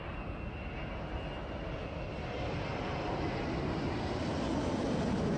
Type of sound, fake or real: real